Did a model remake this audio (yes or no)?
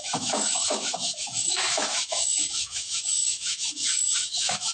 yes